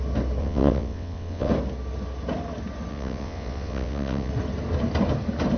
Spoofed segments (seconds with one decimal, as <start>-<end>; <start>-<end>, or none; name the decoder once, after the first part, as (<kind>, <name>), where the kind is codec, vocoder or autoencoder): 0.4-1.5 (vocoder, WaveNeXt); 2.9-4.3